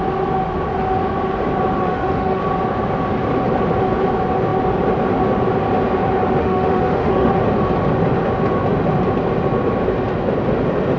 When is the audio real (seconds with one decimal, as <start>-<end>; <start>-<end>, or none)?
0.0-1.8; 2.4-6.4; 7.3-11.0